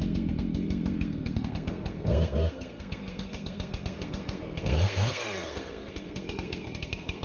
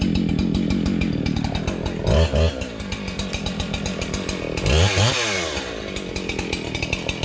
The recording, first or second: second